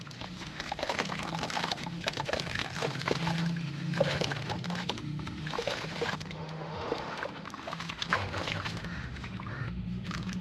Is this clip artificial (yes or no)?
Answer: yes